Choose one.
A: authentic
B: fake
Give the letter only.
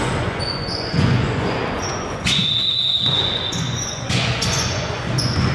B